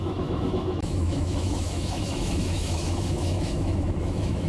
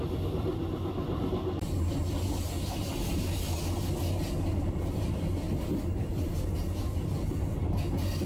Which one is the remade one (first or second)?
first